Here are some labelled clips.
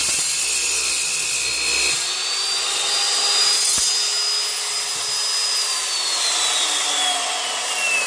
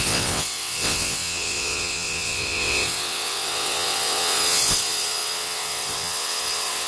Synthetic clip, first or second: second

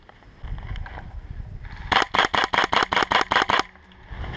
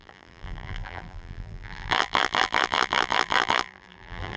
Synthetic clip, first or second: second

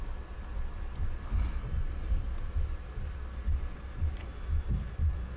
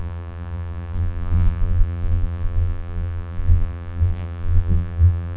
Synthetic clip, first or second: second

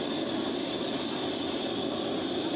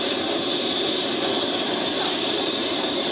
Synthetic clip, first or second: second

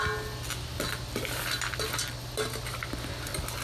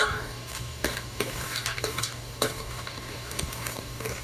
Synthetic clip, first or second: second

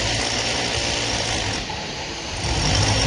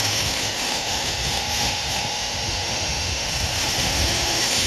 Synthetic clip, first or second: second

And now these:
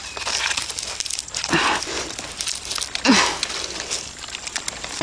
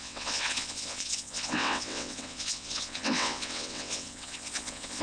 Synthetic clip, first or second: second